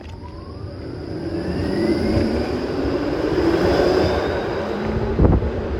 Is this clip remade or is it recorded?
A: remade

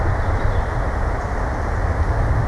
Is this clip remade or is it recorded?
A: recorded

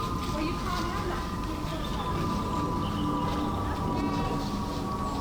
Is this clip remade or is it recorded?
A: recorded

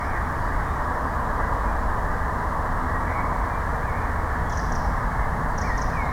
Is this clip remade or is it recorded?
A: recorded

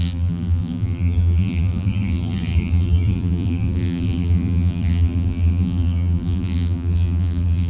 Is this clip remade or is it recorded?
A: remade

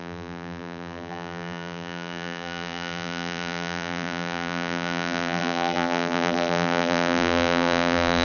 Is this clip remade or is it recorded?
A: remade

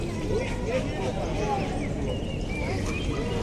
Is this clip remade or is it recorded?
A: recorded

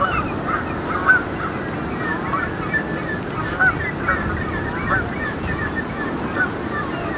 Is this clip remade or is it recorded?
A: recorded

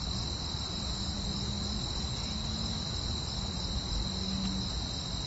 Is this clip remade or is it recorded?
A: recorded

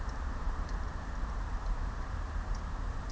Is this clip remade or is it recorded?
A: remade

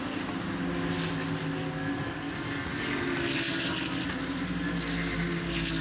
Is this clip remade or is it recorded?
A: recorded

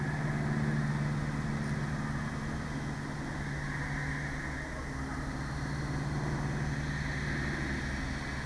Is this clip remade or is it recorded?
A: recorded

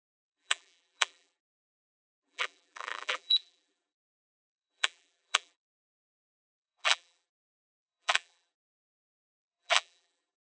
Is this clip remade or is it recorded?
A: remade